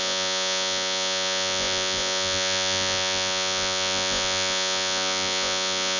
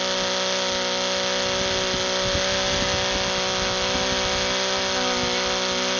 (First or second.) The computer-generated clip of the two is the first